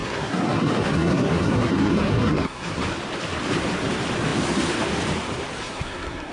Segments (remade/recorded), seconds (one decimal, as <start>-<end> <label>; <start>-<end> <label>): 0.0-2.8 remade; 2.8-5.6 recorded; 5.6-6.3 remade